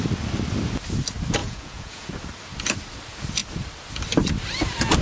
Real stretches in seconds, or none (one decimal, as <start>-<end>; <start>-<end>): 0.0-1.4; 2.1-5.0